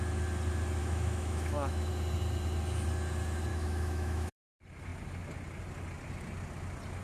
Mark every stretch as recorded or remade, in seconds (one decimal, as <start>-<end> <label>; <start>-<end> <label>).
0.0-0.8 recorded; 0.8-1.9 remade; 1.9-3.5 recorded; 3.5-4.4 remade; 4.4-7.0 recorded